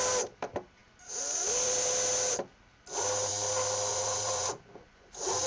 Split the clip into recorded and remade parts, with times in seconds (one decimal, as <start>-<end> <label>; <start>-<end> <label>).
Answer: 0.0-3.9 recorded; 3.9-5.5 remade